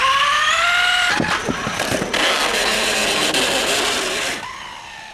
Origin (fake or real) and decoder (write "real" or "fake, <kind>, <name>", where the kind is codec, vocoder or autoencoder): real